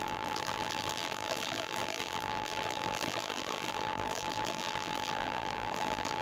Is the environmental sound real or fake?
fake